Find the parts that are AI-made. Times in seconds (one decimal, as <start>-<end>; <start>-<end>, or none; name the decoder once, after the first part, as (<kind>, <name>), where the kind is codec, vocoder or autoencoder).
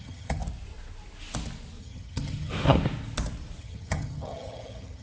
0.0-0.4 (vocoder, HiFi-GAN); 1.8-2.5; 3.6-5.0